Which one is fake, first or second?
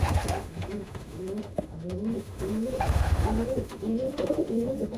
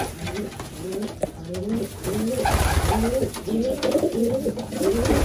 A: first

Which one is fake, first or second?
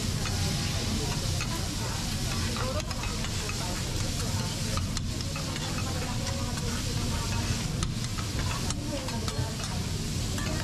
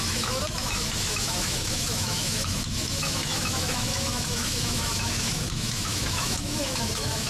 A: second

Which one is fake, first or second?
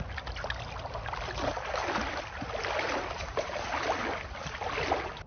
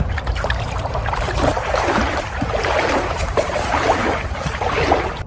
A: second